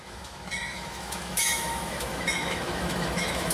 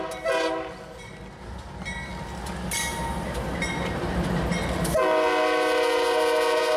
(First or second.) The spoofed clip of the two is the first